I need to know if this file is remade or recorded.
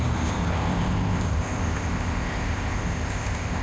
remade